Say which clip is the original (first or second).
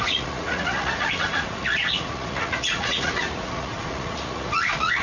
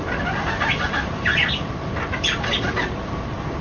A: second